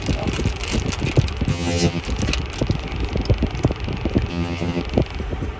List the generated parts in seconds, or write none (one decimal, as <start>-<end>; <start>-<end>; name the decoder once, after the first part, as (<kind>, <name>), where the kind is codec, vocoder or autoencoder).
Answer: 1.5-2.0 (vocoder, HiFi-GAN); 4.3-4.8